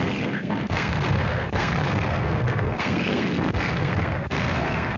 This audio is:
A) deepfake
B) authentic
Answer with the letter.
A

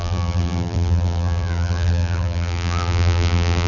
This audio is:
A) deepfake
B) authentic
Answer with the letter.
A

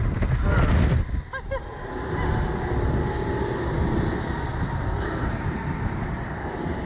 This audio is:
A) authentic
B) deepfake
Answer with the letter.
A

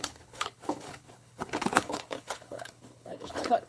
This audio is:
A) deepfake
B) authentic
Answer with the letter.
A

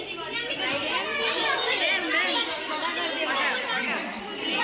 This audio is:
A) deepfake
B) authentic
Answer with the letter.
B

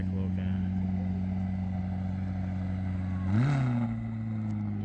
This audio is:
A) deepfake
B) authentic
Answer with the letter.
B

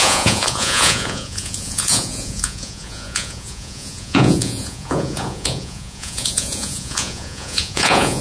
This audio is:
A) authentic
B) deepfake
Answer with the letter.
B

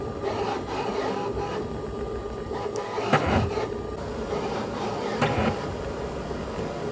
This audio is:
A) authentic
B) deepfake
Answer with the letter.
A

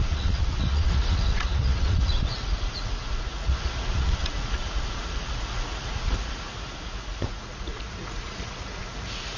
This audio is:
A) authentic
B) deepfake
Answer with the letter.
B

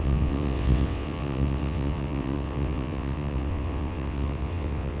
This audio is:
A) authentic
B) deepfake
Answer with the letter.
B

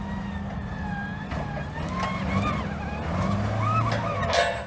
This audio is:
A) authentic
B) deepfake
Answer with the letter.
A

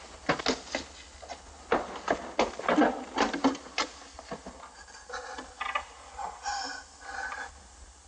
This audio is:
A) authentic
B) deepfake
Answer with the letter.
A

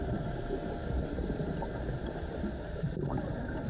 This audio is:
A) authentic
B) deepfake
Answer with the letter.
B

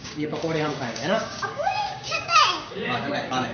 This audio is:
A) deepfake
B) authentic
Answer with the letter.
A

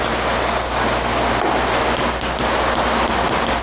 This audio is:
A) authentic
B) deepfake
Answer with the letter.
A